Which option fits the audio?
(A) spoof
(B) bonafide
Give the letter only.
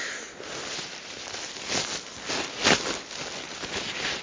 B